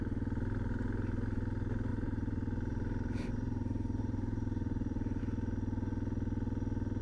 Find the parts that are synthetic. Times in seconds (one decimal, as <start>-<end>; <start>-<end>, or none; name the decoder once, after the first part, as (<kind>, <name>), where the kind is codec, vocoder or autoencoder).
1.9-5.2 (vocoder, BigVGAN v2)

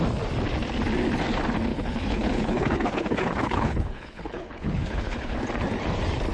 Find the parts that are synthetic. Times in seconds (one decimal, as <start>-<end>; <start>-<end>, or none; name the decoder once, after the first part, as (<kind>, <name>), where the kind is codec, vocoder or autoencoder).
1.7-5.4 (codec, HILCodec)